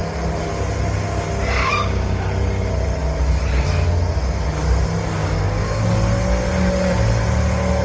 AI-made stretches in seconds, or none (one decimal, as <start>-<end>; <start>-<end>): 1.6-2.2; 5.2-5.8